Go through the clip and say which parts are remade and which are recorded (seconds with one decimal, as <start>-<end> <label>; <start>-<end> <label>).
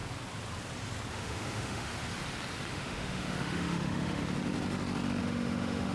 0.0-1.1 recorded; 1.1-1.9 remade; 1.9-2.7 recorded; 2.7-4.2 remade; 4.2-5.2 recorded; 5.2-5.9 remade